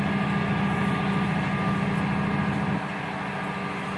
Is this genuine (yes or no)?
yes